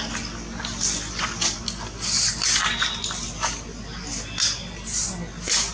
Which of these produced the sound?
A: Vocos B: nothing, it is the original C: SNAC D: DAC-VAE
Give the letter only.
B